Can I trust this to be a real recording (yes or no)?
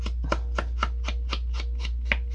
yes